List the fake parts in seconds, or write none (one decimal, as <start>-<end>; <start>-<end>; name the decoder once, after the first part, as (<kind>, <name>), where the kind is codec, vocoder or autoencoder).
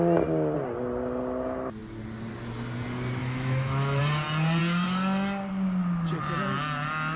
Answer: 3.2-4.0 (autoencoder, DAC-VAE)